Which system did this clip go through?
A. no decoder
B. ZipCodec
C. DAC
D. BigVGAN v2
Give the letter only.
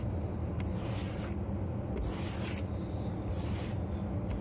A